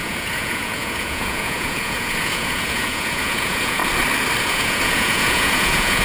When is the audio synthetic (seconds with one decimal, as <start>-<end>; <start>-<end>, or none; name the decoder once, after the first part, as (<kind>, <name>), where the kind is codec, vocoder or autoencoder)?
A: 0.0-3.8 (vocoder, Vocos); 4.4-6.0